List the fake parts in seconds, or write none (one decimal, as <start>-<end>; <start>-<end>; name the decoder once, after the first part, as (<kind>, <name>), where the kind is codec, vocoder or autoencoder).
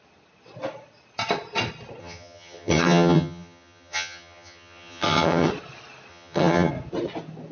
2.0-5.5 (vocoder, HiFi-GAN); 6.1-6.7